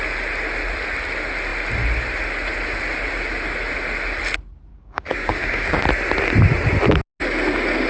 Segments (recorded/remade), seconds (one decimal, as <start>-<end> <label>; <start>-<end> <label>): 0.0-4.7 recorded; 4.7-5.8 remade; 5.8-7.9 recorded